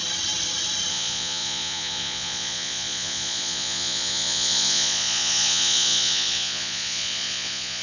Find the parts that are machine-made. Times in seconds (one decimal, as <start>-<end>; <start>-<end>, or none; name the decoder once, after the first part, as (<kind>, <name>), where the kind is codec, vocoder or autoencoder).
0.9-7.8 (vocoder, Vocos)